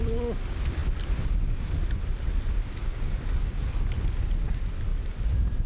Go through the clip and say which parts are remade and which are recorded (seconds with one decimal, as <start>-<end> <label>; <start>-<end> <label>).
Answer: 0.0-5.7 recorded

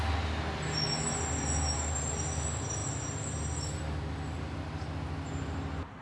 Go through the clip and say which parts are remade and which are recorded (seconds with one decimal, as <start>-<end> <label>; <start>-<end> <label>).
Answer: 0.0-6.0 recorded